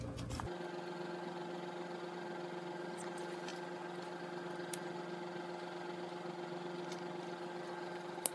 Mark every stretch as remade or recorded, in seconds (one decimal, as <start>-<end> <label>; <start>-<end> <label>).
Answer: 0.0-8.3 recorded